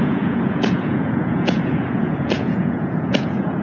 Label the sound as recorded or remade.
remade